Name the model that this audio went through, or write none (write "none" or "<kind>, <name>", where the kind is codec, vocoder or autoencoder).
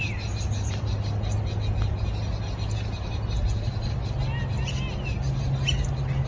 none